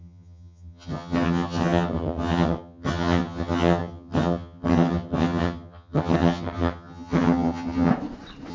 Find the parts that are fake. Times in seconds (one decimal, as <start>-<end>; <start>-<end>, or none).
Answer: 0.0-7.9